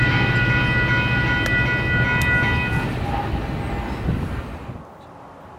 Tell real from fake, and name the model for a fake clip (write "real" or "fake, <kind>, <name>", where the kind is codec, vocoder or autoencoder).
real